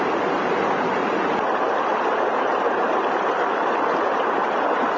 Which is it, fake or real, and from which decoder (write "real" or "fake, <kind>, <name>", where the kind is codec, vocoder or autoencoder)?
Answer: fake, vocoder, BigVGAN v2